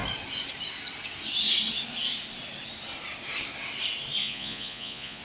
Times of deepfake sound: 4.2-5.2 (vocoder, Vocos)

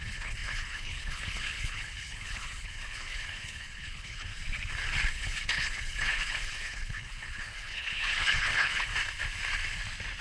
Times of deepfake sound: 0.0-4.3 (codec, HILCodec); 5.1-8.9

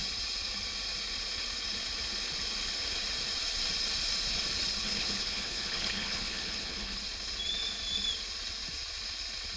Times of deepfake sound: 4.8-7.0 (codec, HILCodec)

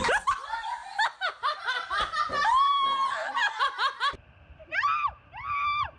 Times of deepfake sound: 0.0-6.0 (vocoder, BigVGAN v2)